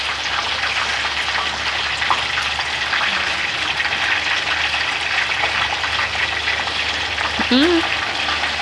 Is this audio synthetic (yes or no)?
no